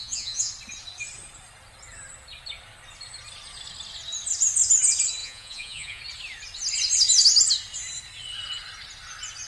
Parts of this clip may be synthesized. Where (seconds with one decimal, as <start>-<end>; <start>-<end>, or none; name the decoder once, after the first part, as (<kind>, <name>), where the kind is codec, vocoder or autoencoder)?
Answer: 0.0-0.5 (vocoder, Vocos); 5.2-6.0